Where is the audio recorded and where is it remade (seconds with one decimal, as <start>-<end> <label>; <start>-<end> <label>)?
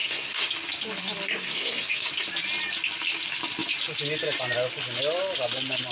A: 0.0-0.5 remade; 0.5-1.3 recorded; 1.3-2.1 remade; 2.1-5.9 recorded